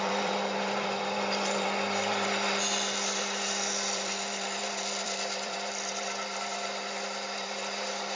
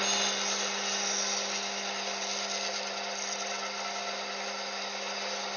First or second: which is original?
second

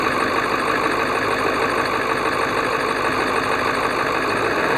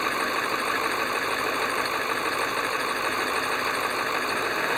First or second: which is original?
first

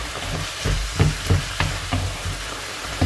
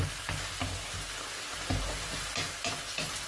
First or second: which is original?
second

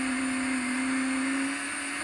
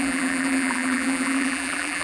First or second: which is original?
first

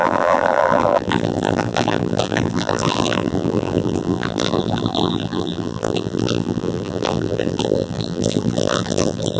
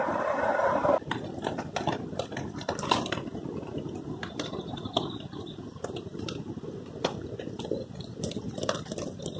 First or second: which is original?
second